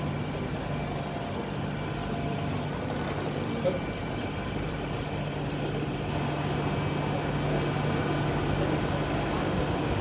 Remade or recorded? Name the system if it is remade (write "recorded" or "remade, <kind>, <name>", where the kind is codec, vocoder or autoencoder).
recorded